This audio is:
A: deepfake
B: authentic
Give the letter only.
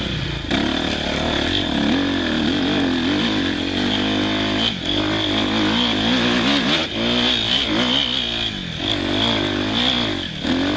B